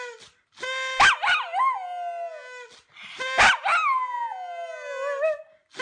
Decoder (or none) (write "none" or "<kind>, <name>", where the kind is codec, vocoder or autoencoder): none